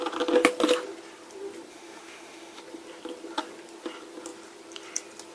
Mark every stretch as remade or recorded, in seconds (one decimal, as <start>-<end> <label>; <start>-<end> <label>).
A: 0.0-1.7 recorded; 1.7-2.6 remade; 2.6-5.3 recorded